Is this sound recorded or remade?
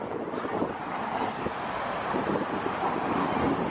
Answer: recorded